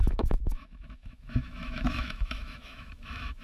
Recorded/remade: remade